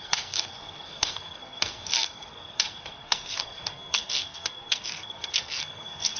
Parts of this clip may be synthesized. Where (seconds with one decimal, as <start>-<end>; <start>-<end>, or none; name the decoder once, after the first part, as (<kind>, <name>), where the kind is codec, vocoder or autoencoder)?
0.0-6.2 (codec, SNAC)